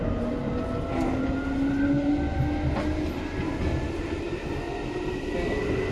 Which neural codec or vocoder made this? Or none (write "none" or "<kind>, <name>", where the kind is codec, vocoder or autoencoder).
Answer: none